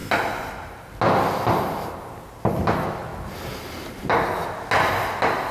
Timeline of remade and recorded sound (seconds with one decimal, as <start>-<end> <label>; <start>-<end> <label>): 0.0-5.5 recorded